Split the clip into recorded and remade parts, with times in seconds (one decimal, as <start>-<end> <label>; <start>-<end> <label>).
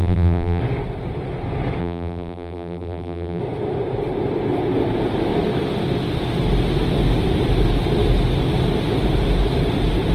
0.0-0.6 remade; 0.6-1.8 recorded; 1.8-3.4 remade; 3.4-10.1 recorded